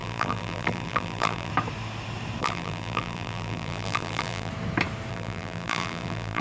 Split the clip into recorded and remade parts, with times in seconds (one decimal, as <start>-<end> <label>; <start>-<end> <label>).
0.0-1.5 remade; 1.5-2.4 recorded; 2.4-4.5 remade; 4.5-5.1 recorded; 5.1-6.4 remade